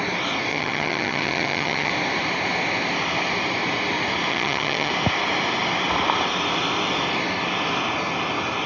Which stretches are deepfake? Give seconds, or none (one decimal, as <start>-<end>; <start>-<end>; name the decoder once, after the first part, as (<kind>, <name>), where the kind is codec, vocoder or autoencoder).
0.5-1.9 (vocoder, HiFi-GAN); 4.3-4.9